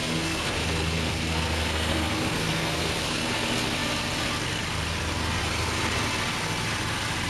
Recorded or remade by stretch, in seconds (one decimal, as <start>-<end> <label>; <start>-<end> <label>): 0.0-2.9 remade; 2.9-7.3 recorded